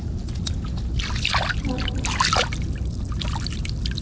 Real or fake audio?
real